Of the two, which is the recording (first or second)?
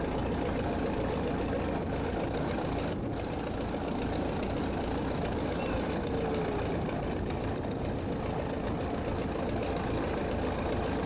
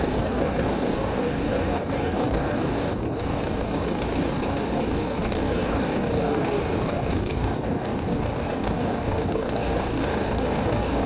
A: first